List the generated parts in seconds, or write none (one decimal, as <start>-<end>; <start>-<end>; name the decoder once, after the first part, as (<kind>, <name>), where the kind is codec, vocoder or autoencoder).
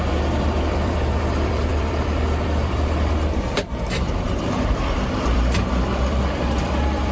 0.0-7.1 (vocoder, BigVGAN v2)